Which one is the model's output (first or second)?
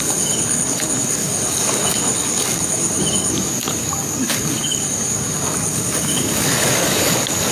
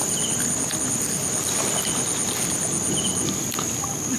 first